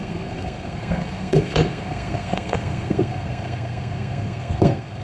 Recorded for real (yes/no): no